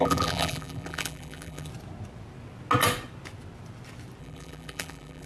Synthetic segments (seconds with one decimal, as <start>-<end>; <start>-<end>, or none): 0.0-1.7; 4.2-5.3

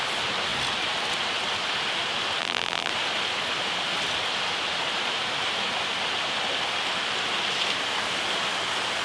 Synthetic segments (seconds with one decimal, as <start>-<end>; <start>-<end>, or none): 2.4-2.9

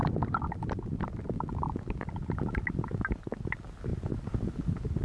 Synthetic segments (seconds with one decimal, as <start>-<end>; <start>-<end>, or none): none

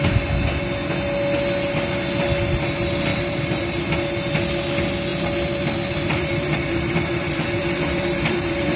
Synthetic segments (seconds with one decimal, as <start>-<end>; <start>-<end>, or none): 3.1-3.9; 5.1-8.8